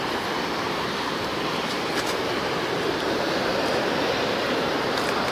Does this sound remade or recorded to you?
remade